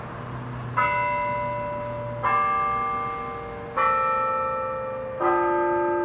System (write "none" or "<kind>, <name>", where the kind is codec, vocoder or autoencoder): none